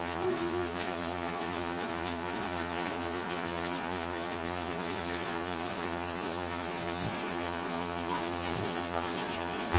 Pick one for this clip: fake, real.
fake